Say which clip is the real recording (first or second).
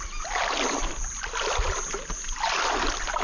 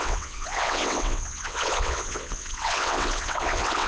first